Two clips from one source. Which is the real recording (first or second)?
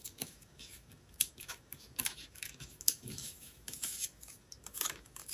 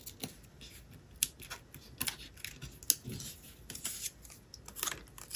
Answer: second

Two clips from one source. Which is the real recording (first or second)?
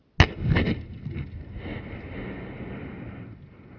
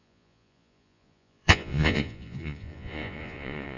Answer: first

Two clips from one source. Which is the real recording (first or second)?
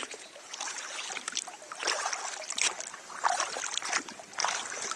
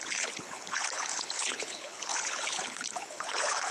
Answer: first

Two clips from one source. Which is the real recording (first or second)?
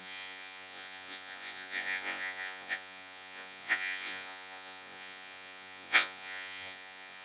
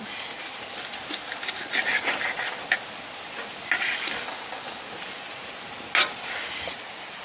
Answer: second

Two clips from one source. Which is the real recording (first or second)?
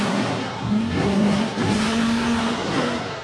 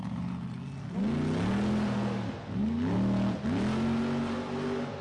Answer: second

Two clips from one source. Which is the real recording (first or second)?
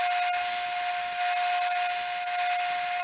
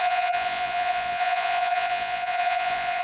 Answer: first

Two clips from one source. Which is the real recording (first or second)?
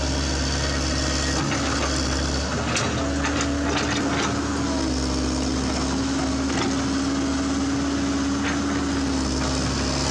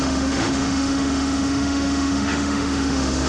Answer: first